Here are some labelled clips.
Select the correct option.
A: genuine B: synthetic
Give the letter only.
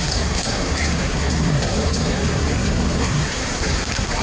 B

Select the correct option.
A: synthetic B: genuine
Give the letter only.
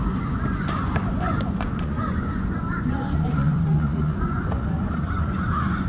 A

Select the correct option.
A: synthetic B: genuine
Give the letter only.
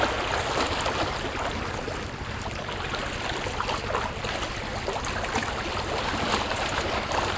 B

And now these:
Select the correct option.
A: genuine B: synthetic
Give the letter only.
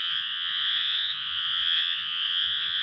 B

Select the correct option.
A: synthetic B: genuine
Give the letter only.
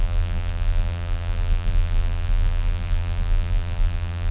A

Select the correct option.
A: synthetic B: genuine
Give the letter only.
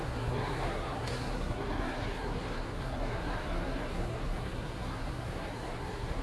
A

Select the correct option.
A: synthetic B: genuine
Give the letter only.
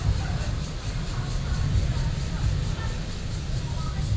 B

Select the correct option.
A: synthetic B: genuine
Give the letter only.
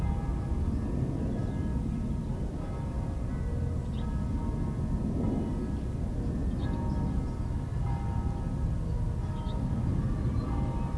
B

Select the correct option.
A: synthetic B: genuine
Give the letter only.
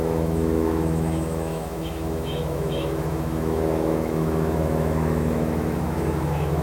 A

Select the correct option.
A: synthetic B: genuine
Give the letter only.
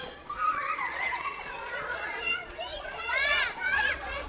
A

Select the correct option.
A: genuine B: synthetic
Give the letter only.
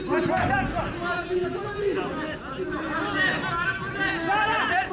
A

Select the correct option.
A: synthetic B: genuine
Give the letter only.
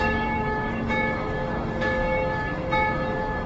A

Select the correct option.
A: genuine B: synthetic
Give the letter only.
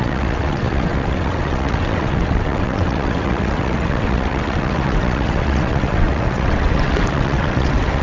B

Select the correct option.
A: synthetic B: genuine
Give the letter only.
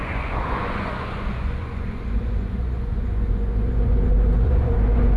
A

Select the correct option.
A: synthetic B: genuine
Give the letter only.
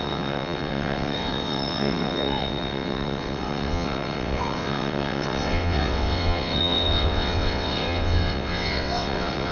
A